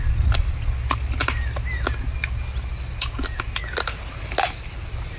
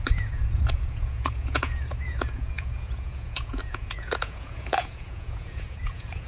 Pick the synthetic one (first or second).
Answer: second